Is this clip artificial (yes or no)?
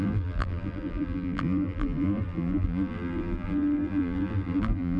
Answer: yes